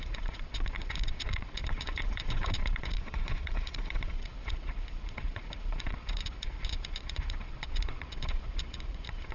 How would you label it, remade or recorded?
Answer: remade